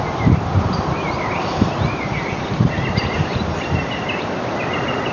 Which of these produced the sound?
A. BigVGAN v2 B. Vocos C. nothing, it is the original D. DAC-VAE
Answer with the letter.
A